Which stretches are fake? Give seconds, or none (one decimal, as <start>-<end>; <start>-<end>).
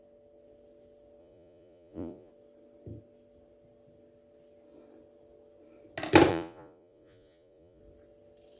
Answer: 1.2-2.3; 6.3-7.8